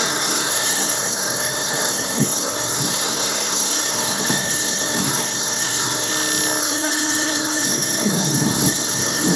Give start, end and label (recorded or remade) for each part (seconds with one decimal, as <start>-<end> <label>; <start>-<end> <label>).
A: 0.0-6.1 remade; 6.1-6.6 recorded; 6.6-9.4 remade